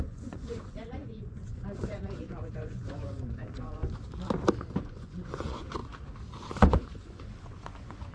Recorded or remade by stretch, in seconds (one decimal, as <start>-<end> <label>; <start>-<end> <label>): 0.0-3.8 remade; 3.8-4.8 recorded; 4.8-5.8 remade; 5.8-6.5 recorded; 6.5-8.1 remade